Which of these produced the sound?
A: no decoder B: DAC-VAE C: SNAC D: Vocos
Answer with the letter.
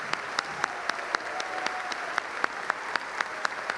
A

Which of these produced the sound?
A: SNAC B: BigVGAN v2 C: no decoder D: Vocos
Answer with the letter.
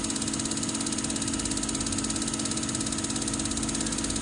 C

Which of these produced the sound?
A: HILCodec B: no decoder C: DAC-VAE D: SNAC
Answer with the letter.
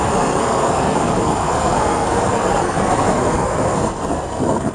D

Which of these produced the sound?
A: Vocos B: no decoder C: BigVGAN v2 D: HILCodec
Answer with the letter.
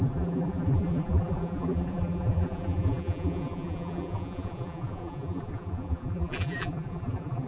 C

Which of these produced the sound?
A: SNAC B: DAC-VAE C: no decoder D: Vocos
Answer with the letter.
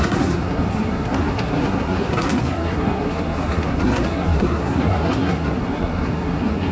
A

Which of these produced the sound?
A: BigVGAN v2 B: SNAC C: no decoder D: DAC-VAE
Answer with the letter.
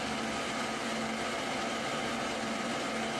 C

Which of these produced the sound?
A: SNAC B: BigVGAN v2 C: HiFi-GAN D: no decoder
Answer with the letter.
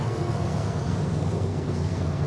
A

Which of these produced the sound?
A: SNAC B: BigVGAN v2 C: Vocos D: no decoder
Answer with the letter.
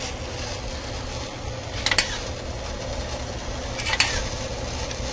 D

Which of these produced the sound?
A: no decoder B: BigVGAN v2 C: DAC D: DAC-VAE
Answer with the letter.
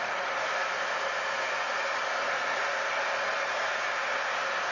A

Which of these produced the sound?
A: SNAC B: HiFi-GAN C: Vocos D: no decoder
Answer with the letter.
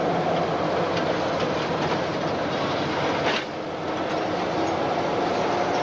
D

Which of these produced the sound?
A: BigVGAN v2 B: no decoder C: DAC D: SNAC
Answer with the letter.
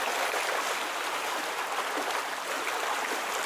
B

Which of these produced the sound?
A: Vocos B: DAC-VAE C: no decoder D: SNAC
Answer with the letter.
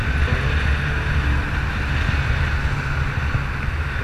C